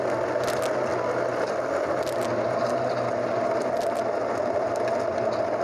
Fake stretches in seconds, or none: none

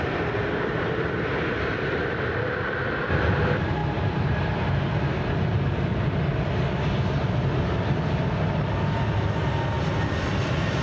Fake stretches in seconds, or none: none

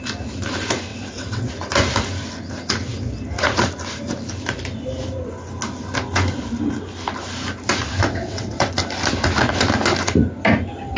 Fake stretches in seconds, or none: 0.9-1.5 (vocoder, WaveNeXt); 8.1-8.7

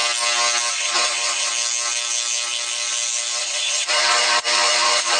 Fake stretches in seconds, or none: 0.7-1.5 (vocoder, Vocos); 3.4-5.2

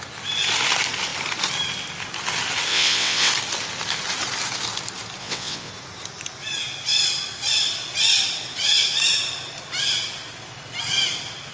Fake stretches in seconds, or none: 2.7-3.3 (vocoder, WaveNeXt); 5.2-5.7

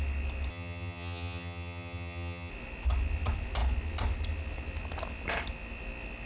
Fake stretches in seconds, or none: 0.5-2.5 (vocoder, HiFi-GAN)

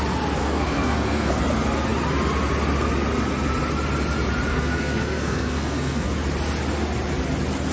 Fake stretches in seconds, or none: 0.4-1.3 (codec, SNAC); 4.5-6.1